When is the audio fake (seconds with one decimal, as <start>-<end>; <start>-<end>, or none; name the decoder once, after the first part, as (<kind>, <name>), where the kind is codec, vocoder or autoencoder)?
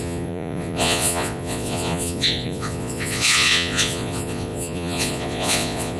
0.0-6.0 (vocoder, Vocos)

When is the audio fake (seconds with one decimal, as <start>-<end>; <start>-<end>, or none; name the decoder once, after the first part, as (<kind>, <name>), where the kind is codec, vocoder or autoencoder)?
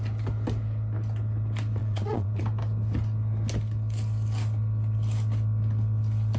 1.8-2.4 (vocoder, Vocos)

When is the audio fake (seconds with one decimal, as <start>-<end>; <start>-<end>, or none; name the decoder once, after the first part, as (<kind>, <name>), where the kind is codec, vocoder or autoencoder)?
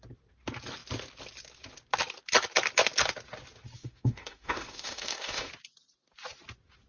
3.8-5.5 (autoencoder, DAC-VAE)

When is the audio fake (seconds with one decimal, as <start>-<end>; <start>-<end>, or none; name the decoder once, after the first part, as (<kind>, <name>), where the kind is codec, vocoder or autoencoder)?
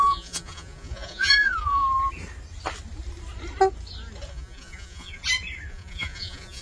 0.0-1.8 (vocoder, Vocos); 4.3-5.2; 5.7-6.6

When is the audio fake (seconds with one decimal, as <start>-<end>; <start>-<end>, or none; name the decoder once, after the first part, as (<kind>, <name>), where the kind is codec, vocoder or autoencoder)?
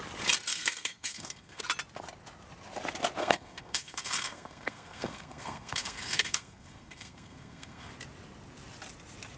0.5-1.6 (codec, SNAC); 3.2-7.9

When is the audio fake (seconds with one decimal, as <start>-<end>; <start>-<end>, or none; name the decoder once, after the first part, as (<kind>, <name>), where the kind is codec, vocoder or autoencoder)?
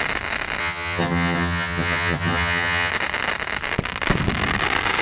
0.6-2.9 (vocoder, HiFi-GAN)